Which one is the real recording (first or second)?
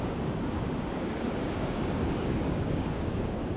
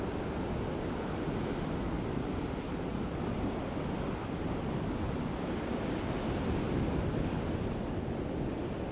second